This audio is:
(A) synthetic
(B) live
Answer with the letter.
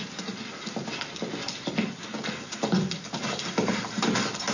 B